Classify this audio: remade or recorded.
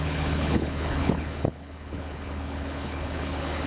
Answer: remade